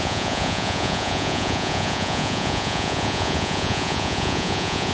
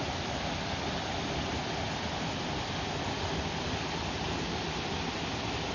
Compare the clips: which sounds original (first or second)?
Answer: second